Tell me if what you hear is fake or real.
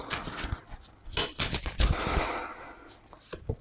real